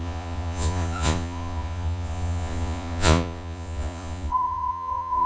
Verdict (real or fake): fake